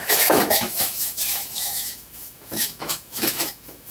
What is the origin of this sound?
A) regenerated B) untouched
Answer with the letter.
A